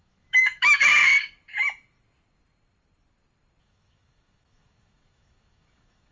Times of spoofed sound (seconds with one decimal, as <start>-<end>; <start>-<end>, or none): 0.0-1.1; 3.6-6.1